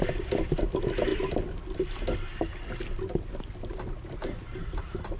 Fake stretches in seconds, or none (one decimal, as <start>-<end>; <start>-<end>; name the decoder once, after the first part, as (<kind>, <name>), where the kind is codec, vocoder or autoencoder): 4.2-4.8 (vocoder, BigVGAN v2)